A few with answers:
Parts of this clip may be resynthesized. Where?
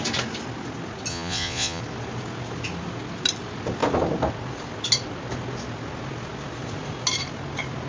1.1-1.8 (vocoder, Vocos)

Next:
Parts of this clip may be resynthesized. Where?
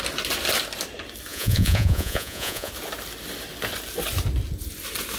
1.3-2.7 (vocoder, Vocos)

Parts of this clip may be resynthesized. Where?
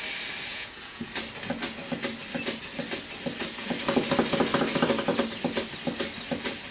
0.5-1.1 (vocoder, Vocos)